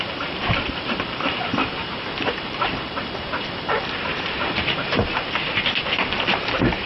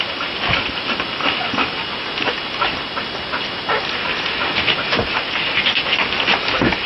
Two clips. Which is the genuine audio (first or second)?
second